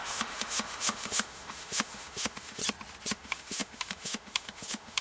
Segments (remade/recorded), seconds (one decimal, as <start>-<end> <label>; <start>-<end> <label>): 0.0-2.6 remade; 2.6-3.1 recorded; 3.1-5.0 remade